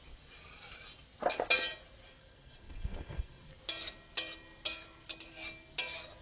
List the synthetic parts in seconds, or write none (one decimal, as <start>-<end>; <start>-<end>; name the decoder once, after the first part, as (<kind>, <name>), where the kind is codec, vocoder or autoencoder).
2.2-3.5 (codec, SNAC)